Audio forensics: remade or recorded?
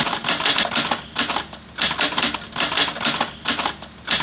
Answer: recorded